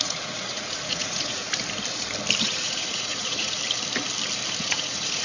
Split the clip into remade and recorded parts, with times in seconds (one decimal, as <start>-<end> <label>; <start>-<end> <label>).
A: 0.0-1.4 remade; 1.4-2.4 recorded; 2.4-3.6 remade; 3.6-4.6 recorded; 4.6-5.2 remade